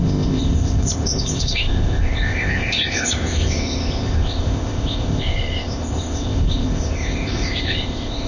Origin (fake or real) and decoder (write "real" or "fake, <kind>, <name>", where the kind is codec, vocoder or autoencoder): fake, codec, ZipCodec